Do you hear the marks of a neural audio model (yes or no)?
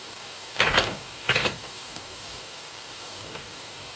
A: yes